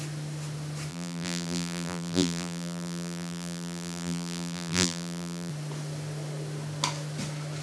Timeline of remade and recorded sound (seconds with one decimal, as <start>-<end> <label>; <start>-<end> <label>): 0.0-0.9 recorded; 0.9-5.5 remade; 5.5-7.6 recorded